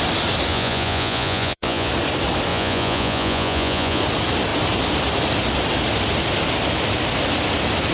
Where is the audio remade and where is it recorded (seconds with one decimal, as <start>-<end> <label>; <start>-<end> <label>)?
0.0-0.5 recorded; 0.5-1.9 remade; 1.9-2.5 recorded; 2.5-4.0 remade; 4.0-7.9 recorded